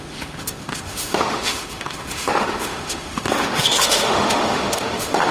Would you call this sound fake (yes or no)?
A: yes